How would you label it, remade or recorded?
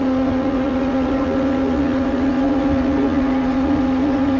remade